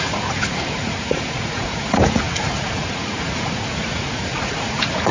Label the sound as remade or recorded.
remade